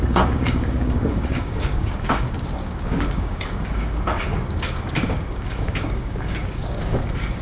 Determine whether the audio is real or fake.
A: fake